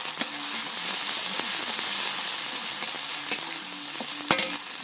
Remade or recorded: recorded